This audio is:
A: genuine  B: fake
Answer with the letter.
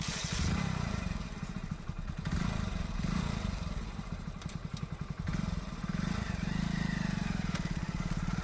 B